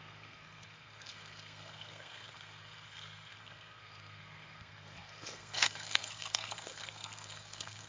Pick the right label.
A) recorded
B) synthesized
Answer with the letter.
B